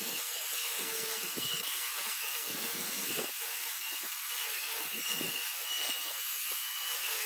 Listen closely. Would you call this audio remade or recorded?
remade